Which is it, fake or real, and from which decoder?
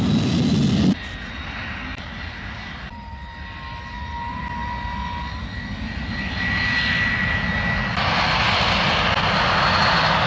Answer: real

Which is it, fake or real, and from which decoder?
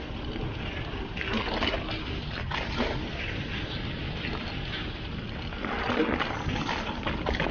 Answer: real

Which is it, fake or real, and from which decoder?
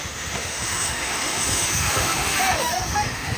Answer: fake, autoencoder, DAC-VAE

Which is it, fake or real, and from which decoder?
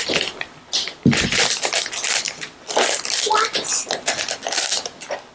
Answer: real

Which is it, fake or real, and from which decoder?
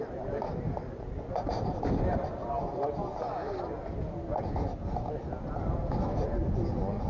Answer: real